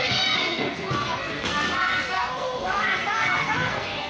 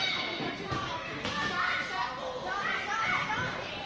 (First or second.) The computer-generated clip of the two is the first